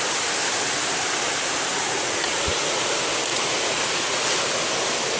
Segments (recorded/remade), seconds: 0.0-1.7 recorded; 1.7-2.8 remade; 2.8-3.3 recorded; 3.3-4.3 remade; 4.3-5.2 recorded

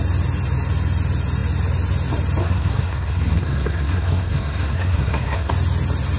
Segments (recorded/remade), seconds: 0.0-2.4 recorded; 2.4-5.5 remade; 5.5-6.2 recorded

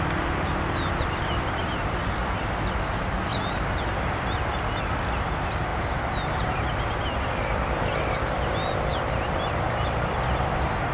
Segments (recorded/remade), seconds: 0.0-10.9 recorded